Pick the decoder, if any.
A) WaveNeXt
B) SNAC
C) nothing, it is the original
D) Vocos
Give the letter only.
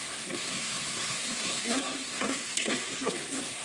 B